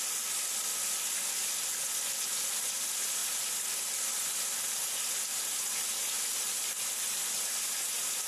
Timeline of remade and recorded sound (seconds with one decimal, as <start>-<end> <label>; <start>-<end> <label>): 0.0-8.3 recorded